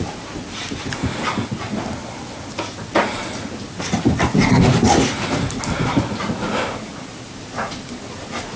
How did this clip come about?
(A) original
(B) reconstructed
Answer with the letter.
A